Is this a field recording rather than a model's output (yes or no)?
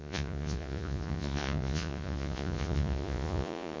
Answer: no